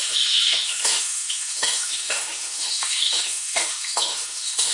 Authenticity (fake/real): fake